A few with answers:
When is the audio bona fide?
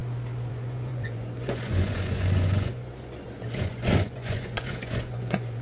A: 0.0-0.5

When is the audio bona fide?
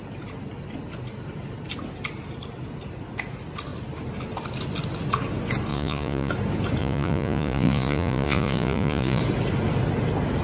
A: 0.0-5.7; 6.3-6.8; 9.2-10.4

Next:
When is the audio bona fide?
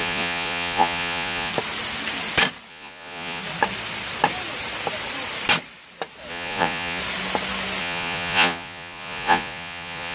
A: 1.5-2.7; 3.4-6.3; 7.0-7.8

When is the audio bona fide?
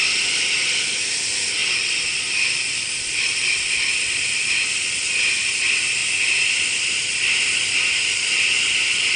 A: 0.0-9.2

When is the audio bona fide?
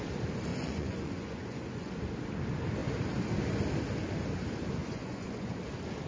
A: 0.0-0.5; 1.9-4.8; 5.5-6.1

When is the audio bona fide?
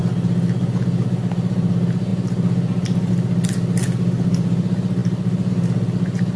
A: 0.0-6.4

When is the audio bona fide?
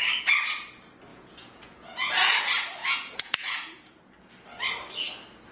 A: 0.0-1.1; 2.3-2.8; 4.0-5.5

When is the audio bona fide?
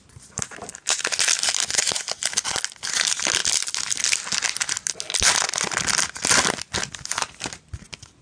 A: 0.0-8.2